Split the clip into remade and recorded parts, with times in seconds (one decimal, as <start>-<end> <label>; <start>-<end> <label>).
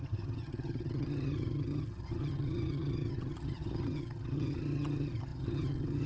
0.0-6.1 remade